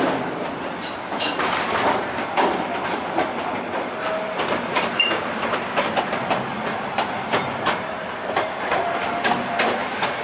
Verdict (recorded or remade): remade